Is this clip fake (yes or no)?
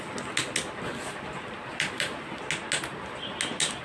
no